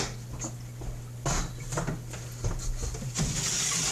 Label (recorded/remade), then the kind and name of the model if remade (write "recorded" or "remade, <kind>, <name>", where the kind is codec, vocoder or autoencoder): recorded